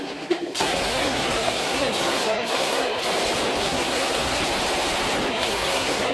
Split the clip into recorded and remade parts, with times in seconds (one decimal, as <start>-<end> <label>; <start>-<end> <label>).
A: 0.0-3.0 remade; 3.0-3.6 recorded; 3.6-4.4 remade; 4.4-5.3 recorded; 5.3-6.1 remade